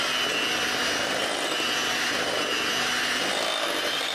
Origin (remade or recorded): recorded